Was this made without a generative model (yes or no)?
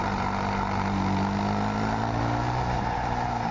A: yes